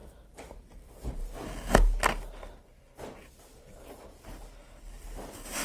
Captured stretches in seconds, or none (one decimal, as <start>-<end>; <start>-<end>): 0.0-5.6